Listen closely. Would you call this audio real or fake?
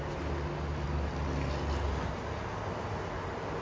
real